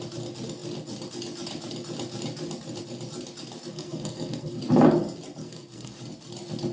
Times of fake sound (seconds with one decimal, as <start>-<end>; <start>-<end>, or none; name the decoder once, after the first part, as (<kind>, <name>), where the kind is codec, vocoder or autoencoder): 3.7-4.6 (codec, SNAC); 5.4-6.0